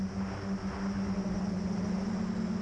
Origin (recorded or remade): recorded